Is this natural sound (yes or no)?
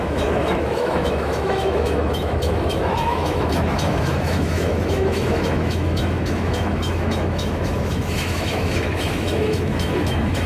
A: no